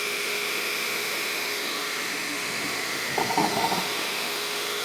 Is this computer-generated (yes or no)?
yes